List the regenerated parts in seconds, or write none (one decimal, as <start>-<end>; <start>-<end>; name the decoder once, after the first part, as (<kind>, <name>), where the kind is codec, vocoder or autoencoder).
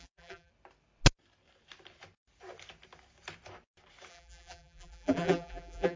0.0-0.5 (vocoder, BigVGAN v2); 4.1-6.0